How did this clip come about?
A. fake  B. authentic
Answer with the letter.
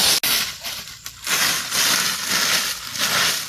B